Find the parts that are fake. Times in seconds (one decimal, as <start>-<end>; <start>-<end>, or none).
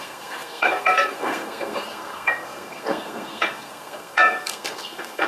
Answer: 0.0-5.3